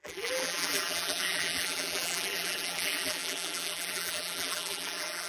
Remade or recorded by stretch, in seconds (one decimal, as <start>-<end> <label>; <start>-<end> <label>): 0.0-5.3 remade